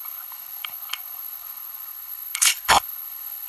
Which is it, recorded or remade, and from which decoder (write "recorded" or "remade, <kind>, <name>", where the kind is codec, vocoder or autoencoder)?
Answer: remade, codec, HILCodec